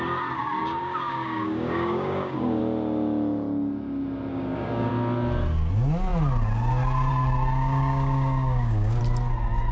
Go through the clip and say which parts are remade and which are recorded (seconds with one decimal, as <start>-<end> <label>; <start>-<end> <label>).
0.0-0.6 recorded; 0.6-2.6 remade; 2.6-4.3 recorded; 4.3-4.9 remade; 4.9-7.6 recorded; 7.6-9.0 remade; 9.0-9.7 recorded